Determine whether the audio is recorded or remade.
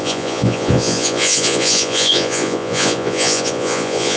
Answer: remade